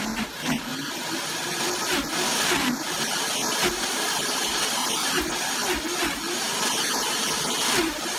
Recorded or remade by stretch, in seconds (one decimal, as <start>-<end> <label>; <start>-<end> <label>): 0.0-8.2 recorded